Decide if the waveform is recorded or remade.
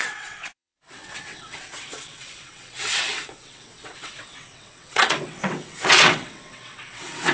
remade